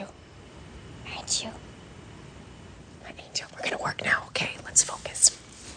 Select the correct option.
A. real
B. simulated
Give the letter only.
B